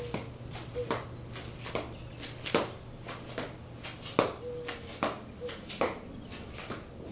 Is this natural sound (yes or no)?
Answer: yes